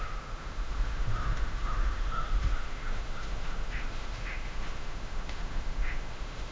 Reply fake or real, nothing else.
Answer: fake